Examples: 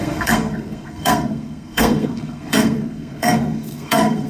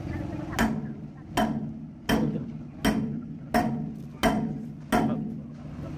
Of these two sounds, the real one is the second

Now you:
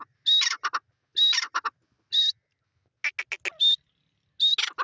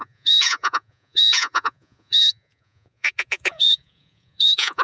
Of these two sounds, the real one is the first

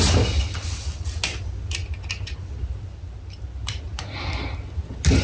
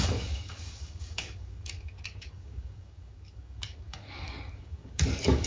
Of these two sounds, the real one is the first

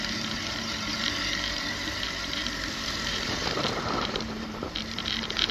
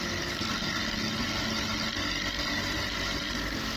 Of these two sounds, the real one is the second